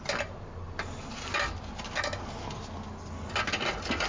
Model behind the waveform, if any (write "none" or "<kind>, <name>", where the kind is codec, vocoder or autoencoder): none